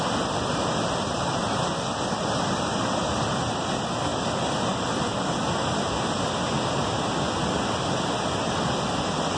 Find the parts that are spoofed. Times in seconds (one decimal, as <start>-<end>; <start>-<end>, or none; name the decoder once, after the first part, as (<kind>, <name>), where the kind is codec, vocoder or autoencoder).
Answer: none